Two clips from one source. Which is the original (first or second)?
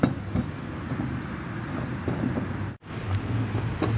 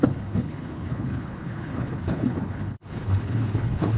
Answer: first